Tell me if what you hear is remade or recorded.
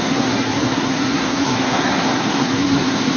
remade